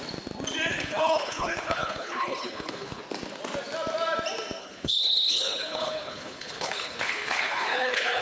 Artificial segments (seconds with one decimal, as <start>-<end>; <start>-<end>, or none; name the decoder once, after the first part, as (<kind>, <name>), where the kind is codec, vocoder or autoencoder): 0.7-3.0 (codec, HILCodec); 4.6-8.2